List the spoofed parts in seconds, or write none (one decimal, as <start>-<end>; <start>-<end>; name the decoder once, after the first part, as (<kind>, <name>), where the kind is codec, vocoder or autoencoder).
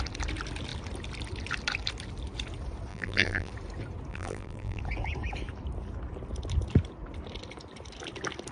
2.9-3.5 (vocoder, BigVGAN v2); 4.1-4.8